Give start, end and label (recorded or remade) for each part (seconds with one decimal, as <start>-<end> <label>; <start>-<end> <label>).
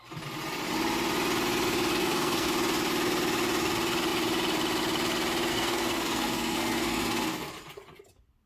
0.0-1.9 recorded; 1.9-2.5 remade; 2.5-5.5 recorded; 5.5-7.5 remade; 7.5-8.5 recorded